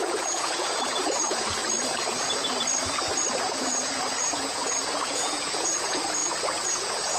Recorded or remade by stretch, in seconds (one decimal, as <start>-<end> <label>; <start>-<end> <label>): 0.0-1.6 remade; 1.6-3.4 recorded; 3.4-7.2 remade